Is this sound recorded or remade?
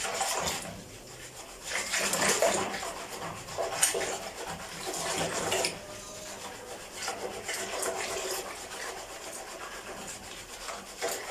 recorded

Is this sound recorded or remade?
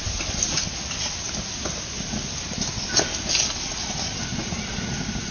recorded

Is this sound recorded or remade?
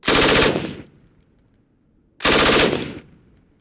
recorded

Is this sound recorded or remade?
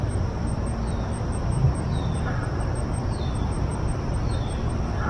remade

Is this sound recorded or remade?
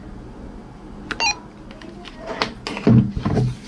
recorded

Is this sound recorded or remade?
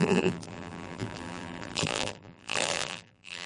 remade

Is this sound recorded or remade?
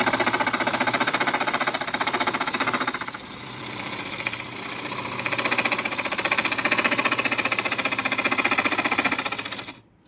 remade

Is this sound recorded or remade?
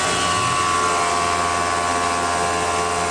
recorded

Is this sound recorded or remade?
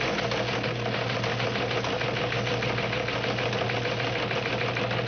recorded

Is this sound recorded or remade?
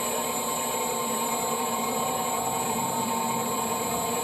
remade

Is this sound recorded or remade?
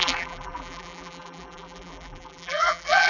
remade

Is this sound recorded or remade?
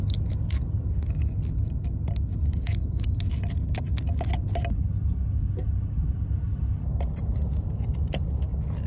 recorded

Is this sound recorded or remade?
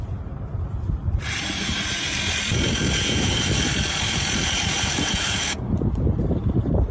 remade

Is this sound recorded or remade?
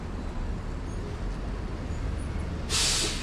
recorded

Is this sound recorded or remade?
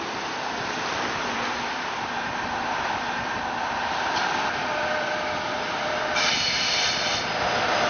remade